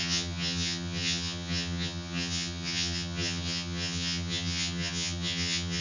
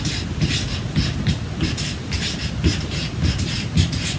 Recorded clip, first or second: second